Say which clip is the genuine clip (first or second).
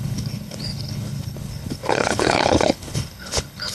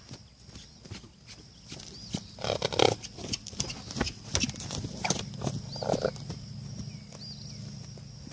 second